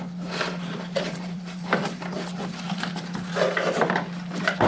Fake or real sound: fake